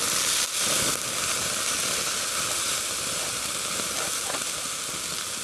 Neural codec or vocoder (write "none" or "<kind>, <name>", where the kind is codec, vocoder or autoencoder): none